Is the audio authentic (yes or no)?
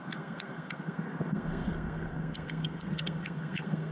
no